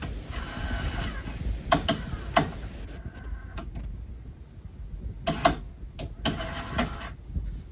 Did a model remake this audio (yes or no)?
no